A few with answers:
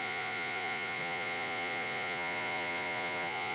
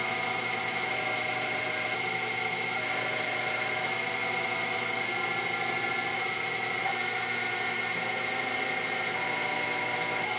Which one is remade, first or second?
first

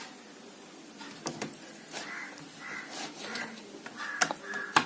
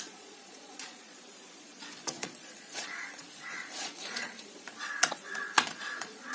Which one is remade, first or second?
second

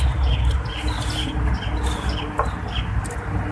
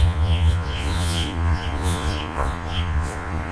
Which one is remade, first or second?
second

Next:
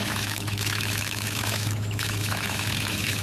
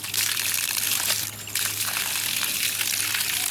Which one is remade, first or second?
first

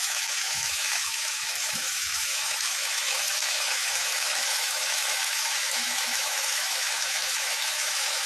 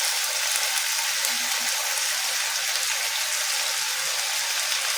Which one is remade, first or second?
first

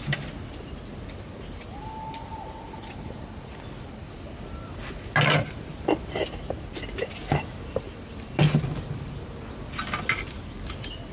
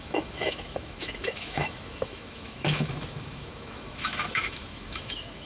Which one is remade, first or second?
second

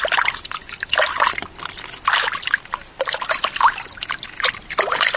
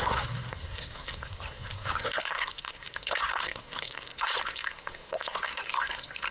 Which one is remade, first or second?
second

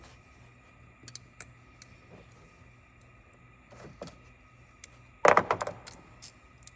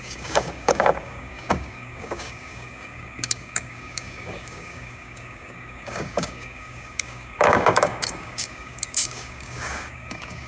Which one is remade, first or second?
second